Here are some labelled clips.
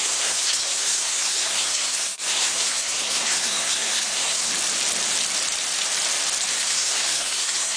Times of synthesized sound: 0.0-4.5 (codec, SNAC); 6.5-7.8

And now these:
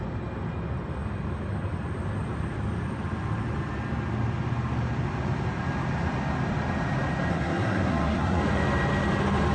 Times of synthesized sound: 7.3-8.4 (codec, SNAC)